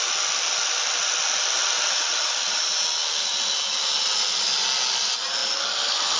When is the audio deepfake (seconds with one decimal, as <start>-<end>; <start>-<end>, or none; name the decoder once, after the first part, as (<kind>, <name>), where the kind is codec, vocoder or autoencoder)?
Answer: none

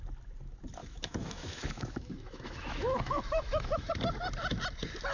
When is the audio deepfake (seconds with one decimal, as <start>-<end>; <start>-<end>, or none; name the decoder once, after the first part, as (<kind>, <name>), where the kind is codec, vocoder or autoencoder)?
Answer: 0.8-3.9 (autoencoder, DAC-VAE)

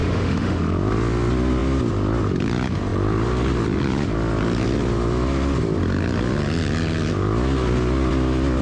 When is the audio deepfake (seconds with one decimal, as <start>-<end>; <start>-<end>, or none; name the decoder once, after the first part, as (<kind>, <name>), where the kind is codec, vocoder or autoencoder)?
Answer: 0.0-0.6 (autoencoder, DAC-VAE)

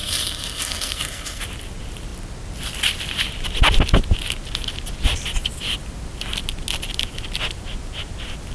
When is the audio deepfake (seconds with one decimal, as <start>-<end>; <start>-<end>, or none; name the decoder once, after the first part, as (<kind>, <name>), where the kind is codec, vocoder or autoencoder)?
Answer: 0.0-1.4 (codec, SNAC)